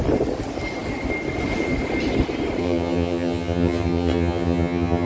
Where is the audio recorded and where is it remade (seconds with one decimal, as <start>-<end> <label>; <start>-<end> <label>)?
0.0-2.6 recorded; 2.6-5.1 remade